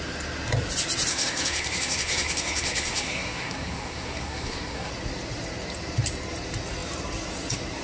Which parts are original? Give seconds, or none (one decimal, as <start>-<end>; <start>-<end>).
0.0-1.1; 4.9-7.8